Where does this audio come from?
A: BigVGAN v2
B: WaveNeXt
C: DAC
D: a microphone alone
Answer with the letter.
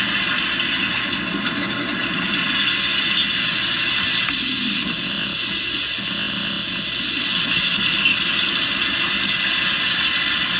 D